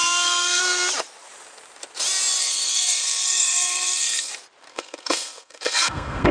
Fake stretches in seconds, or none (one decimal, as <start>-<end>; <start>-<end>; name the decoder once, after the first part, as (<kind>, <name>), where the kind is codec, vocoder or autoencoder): 0.0-0.6 (codec, SNAC); 2.4-4.3; 4.7-6.3